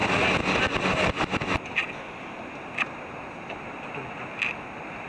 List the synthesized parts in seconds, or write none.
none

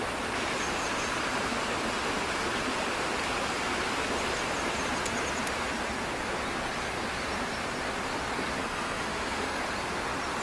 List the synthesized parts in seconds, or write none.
8.6-9.6 (codec, SNAC)

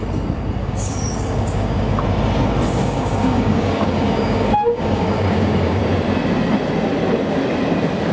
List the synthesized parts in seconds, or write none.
0.6-2.0 (codec, DAC); 2.8-5.8

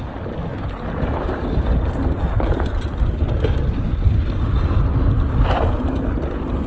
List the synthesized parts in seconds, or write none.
none

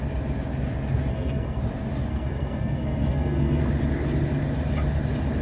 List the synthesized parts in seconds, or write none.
1.1-1.6 (codec, SNAC); 2.1-3.6

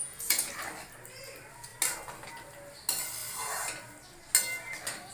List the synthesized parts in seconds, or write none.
0.0-0.5 (vocoder, Vocos)

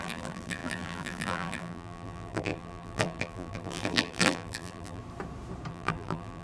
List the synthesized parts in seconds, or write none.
0.0-5.0 (vocoder, BigVGAN v2); 5.7-6.4

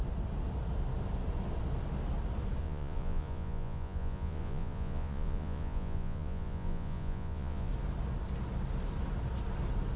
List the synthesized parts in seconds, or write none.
2.6-7.7 (vocoder, Vocos)